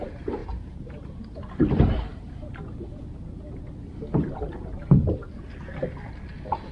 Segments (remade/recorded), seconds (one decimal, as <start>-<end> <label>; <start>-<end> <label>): 0.0-6.7 recorded